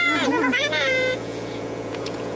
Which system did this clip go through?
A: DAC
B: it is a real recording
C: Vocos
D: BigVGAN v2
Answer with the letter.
C